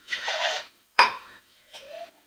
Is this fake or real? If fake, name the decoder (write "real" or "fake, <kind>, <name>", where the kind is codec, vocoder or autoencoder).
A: fake, autoencoder, DAC-VAE